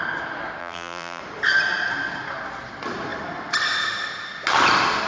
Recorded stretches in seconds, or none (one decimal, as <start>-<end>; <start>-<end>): 0.0-0.6; 1.2-5.1